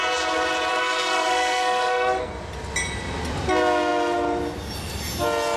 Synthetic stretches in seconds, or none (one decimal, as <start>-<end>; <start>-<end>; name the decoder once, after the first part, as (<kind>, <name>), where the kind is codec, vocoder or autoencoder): 0.7-2.3 (codec, SNAC)